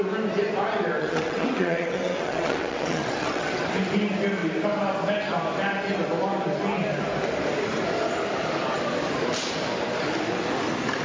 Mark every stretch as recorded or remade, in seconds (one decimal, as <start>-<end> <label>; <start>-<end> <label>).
0.0-1.0 recorded; 1.0-3.7 remade; 3.7-11.0 recorded